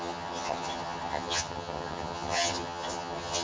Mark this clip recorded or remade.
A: remade